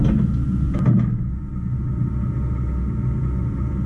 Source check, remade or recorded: recorded